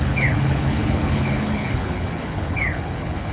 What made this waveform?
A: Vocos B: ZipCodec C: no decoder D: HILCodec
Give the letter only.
D